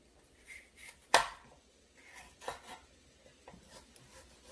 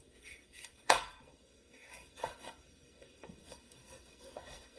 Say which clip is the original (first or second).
first